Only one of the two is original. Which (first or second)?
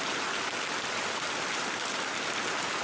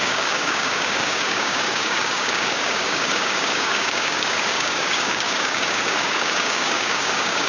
first